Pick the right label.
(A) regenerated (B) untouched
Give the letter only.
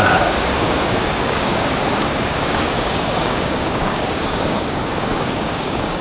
A